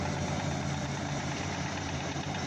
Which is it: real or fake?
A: fake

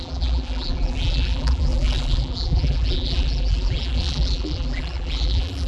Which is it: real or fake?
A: fake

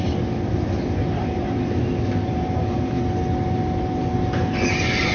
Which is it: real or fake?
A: real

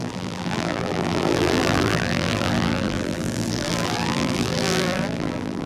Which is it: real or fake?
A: fake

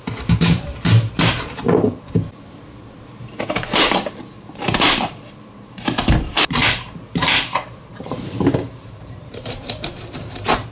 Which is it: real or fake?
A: fake